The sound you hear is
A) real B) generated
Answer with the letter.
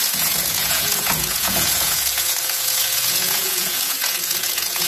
B